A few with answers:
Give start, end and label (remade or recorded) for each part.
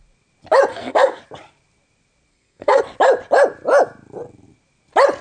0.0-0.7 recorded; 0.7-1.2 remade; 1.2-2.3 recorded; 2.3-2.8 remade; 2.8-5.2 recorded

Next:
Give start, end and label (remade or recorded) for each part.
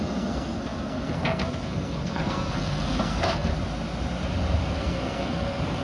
0.0-3.5 remade; 3.5-4.7 recorded; 4.7-5.8 remade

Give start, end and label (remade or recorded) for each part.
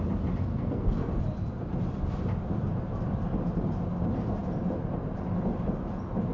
0.0-0.5 recorded; 0.5-1.2 remade; 1.2-6.3 recorded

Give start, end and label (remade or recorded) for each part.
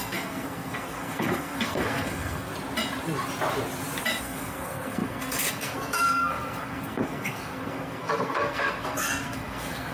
0.0-2.5 remade; 2.5-4.2 recorded; 4.2-9.9 remade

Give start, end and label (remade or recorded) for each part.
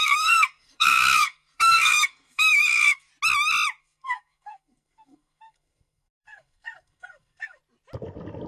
0.0-3.1 remade; 3.1-3.8 recorded; 3.8-7.6 remade; 7.6-8.5 recorded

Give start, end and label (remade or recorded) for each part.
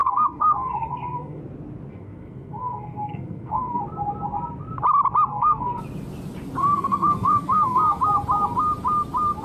0.0-1.4 remade; 1.4-1.9 recorded; 1.9-3.8 remade; 3.8-5.3 recorded; 5.3-5.8 remade; 5.8-6.6 recorded; 6.6-8.0 remade; 8.0-9.4 recorded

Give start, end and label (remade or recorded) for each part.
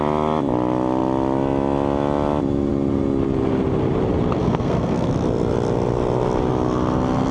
0.0-4.4 recorded; 4.4-5.1 remade; 5.1-7.3 recorded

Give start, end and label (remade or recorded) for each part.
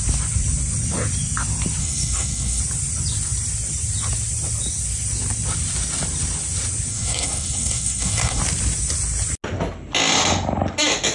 0.0-1.8 recorded; 1.8-2.6 remade; 2.6-6.9 recorded; 6.9-8.4 remade; 8.4-11.1 recorded